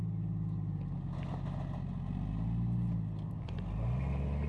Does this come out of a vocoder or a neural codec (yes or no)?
no